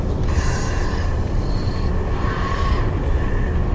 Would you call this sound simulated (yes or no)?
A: no